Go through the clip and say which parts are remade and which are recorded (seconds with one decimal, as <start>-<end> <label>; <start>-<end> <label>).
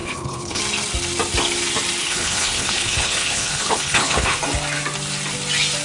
0.0-0.6 remade; 0.6-2.0 recorded; 2.0-4.4 remade; 4.4-5.8 recorded